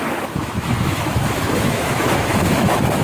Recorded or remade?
remade